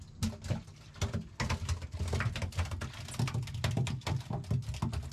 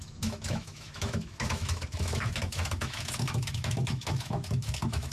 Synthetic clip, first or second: second